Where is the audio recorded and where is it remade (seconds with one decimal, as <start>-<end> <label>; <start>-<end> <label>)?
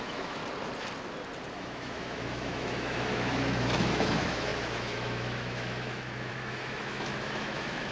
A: 0.0-0.4 remade; 0.4-1.5 recorded; 1.5-7.9 remade